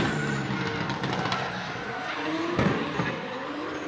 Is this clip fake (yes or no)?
no